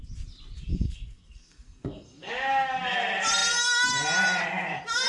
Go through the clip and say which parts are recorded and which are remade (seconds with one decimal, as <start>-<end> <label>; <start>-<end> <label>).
0.0-0.7 recorded; 0.7-2.3 remade; 2.3-5.1 recorded